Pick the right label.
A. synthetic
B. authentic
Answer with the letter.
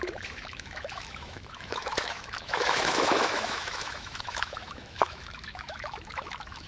A